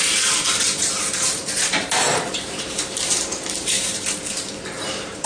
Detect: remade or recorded remade